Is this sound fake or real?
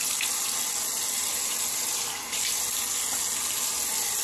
real